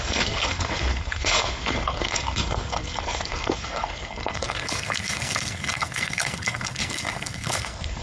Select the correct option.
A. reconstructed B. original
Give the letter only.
A